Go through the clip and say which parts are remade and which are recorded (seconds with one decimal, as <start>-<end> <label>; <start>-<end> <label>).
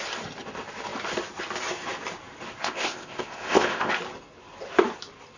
0.0-2.6 recorded; 2.6-3.9 remade; 3.9-5.4 recorded